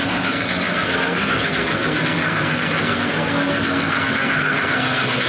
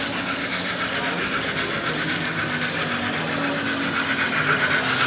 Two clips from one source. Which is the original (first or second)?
second